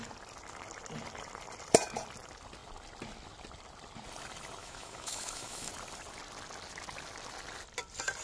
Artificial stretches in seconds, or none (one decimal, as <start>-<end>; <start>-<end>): 4.6-5.7